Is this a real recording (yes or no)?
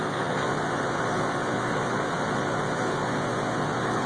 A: no